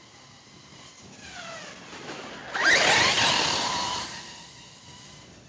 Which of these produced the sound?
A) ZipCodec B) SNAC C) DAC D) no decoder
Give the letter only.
D